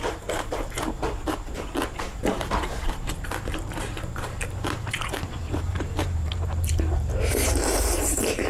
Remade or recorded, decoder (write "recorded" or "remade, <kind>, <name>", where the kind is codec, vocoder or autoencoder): remade, vocoder, BigVGAN v2